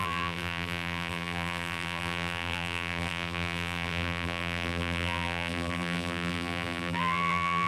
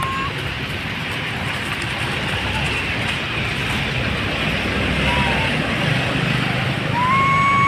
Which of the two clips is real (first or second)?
second